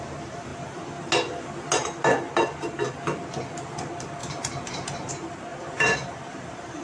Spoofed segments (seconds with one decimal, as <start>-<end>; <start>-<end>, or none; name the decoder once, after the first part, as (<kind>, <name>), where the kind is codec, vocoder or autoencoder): 4.2-5.1 (vocoder, BigVGAN v2); 5.5-6.8